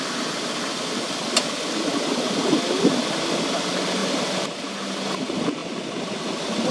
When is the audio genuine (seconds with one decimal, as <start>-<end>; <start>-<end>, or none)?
0.0-4.0; 5.1-6.7